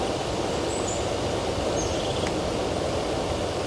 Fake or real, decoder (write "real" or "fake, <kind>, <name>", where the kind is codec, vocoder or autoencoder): real